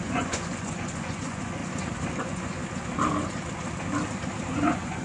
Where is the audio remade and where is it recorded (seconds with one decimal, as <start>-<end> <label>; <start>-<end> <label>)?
0.0-1.6 remade; 1.6-2.2 recorded; 2.2-2.6 remade; 2.6-4.5 recorded; 4.5-5.0 remade